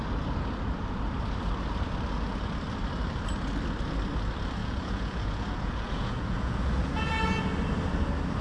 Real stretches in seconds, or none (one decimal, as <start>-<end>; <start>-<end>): 0.0-4.6; 7.1-8.4